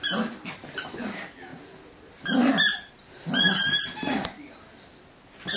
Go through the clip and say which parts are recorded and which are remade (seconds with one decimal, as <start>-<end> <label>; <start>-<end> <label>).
0.0-5.6 recorded